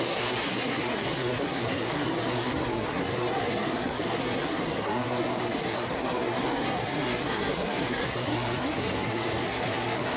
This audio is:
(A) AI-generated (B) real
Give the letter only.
A